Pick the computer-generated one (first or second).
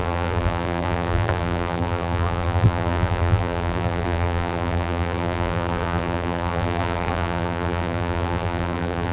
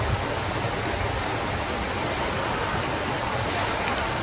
first